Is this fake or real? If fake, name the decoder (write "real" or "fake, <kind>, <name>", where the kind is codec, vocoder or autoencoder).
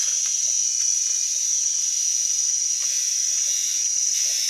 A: real